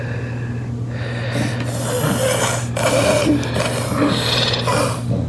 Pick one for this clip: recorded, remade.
recorded